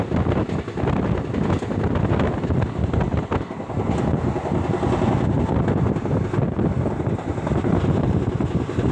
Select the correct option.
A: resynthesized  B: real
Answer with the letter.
B